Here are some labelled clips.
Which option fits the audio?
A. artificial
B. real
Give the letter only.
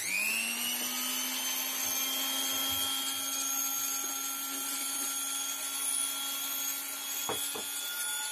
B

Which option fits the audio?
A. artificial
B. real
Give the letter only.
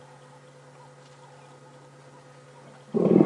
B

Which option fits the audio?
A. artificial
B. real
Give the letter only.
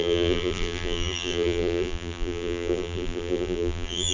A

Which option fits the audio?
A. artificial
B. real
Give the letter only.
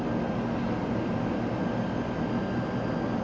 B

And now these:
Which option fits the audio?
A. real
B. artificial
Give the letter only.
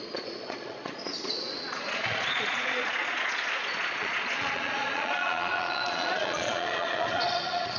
B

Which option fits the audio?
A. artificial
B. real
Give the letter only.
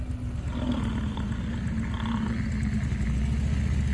B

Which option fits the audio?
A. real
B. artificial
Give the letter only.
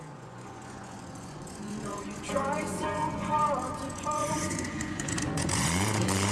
B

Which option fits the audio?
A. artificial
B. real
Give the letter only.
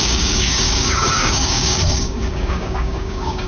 A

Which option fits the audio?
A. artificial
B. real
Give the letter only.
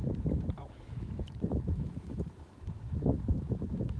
A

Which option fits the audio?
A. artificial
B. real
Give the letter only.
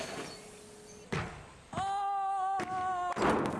B